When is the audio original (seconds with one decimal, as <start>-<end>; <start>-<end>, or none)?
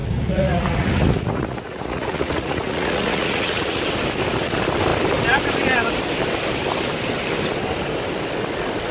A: 3.8-8.9